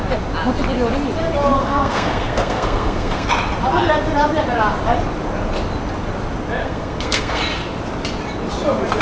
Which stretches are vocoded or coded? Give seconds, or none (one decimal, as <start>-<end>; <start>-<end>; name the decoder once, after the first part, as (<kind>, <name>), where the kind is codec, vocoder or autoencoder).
1.6-3.3 (codec, SNAC); 6.6-7.4

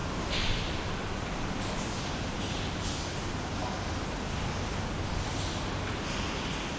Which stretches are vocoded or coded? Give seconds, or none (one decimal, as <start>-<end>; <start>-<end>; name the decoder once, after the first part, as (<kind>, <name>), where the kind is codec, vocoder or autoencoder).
none

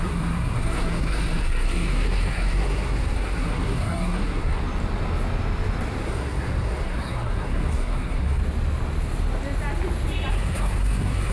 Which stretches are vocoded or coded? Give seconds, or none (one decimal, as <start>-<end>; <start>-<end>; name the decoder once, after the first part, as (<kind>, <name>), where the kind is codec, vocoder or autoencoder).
0.0-4.6 (codec, SNAC); 6.0-8.4; 10.3-11.3

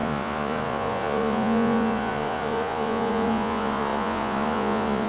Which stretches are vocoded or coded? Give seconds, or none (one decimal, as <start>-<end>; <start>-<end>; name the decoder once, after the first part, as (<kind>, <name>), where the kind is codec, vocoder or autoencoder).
0.0-5.1 (vocoder, Vocos)

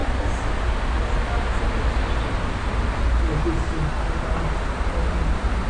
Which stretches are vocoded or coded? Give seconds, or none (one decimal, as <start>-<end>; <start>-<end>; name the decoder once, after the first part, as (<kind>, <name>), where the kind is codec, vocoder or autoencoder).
none

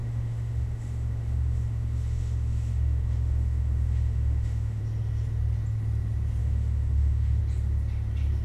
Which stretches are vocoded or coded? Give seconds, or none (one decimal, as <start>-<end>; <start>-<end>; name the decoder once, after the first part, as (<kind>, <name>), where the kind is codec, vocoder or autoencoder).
0.0-4.8 (autoencoder, DAC-VAE); 6.4-7.4

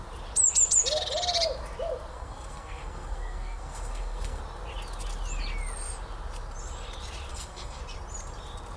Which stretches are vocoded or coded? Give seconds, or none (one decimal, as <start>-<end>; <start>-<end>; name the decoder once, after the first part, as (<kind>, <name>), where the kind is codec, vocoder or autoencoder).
2.1-4.4 (codec, SNAC); 7.3-7.8

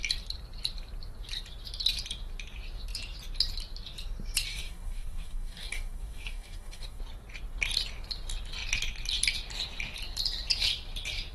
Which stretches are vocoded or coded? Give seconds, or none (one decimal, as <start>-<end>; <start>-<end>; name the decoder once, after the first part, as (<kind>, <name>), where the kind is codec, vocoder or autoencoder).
4.5-7.0 (codec, DAC)